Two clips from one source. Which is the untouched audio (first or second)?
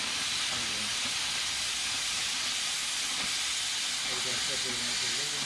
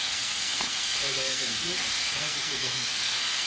first